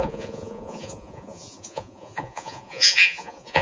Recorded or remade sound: remade